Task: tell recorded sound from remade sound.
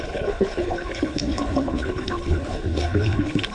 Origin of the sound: remade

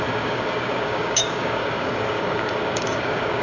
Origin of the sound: remade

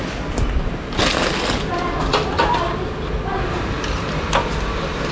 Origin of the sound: recorded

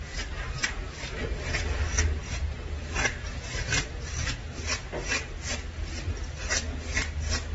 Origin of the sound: recorded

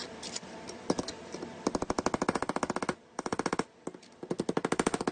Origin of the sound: recorded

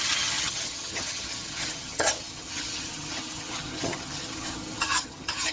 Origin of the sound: remade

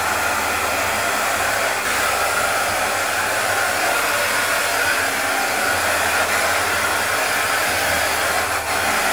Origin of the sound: recorded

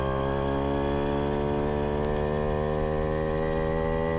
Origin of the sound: recorded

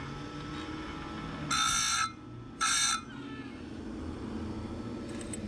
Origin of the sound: recorded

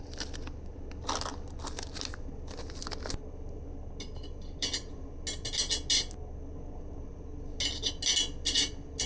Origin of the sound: recorded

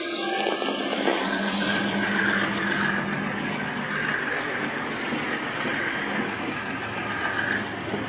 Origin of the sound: recorded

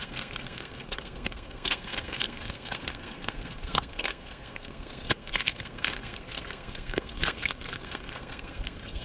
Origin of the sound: remade